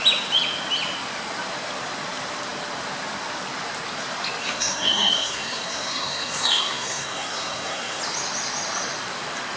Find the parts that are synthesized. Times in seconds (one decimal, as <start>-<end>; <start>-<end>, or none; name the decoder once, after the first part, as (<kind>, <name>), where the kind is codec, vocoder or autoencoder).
4.4-8.0 (codec, SNAC)